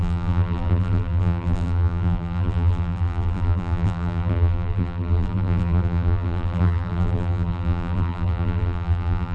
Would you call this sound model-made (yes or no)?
yes